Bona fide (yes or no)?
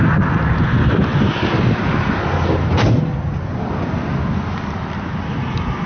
yes